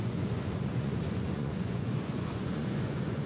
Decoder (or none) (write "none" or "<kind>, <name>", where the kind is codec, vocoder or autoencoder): vocoder, Vocos